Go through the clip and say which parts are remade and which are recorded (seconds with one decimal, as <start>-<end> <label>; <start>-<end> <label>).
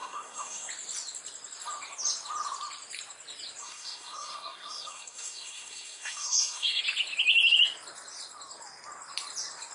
0.0-0.7 remade; 0.7-3.6 recorded; 3.6-6.8 remade; 6.8-9.7 recorded